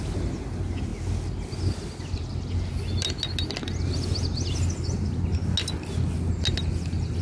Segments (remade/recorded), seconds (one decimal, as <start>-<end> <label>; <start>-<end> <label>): 0.0-7.2 recorded